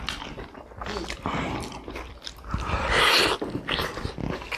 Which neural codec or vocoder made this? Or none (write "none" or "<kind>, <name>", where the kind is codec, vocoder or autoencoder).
none